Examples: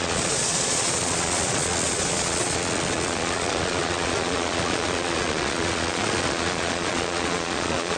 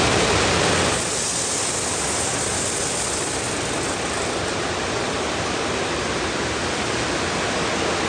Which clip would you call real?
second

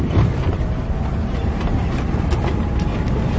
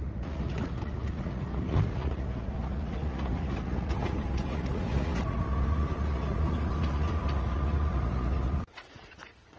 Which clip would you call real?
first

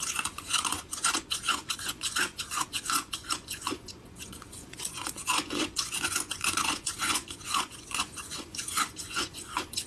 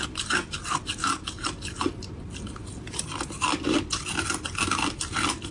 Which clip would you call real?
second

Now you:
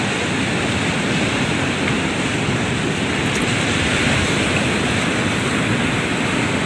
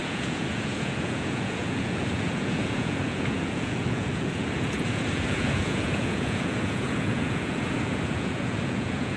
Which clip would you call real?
first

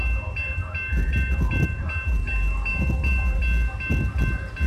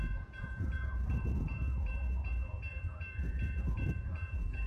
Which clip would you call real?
first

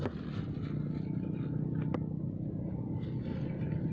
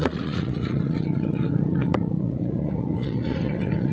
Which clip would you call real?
first